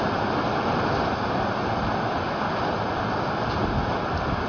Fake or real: real